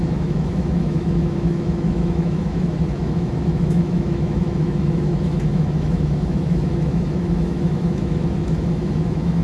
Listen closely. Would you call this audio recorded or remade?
remade